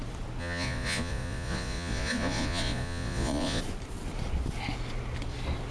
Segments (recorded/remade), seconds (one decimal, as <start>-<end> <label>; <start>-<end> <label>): 0.0-0.4 recorded; 0.4-3.6 remade; 3.6-5.7 recorded